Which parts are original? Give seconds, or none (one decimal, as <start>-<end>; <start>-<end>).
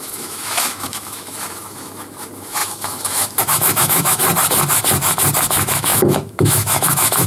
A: 4.2-5.5